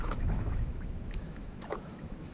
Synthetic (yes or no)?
yes